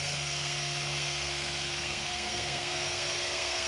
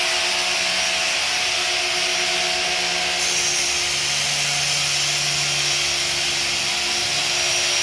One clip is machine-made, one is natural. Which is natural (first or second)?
second